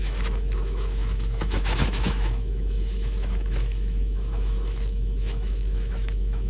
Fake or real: fake